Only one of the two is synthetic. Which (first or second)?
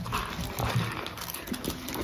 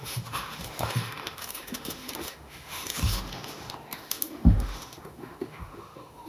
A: second